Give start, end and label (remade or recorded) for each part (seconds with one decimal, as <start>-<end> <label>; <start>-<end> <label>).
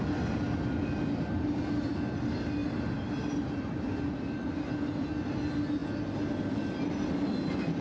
0.0-7.8 recorded